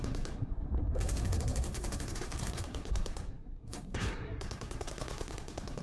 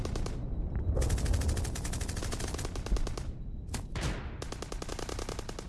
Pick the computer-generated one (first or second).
first